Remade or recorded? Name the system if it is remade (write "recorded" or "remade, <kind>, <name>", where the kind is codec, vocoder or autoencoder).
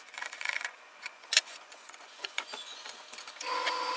remade, vocoder, Vocos